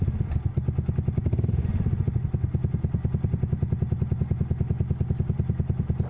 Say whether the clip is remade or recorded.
recorded